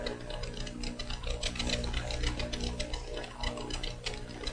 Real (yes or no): yes